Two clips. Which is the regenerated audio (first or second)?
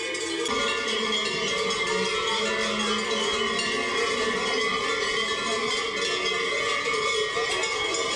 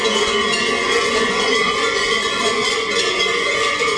second